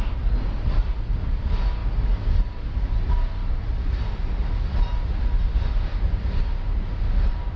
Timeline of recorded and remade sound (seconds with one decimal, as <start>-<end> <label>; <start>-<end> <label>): 0.0-7.6 recorded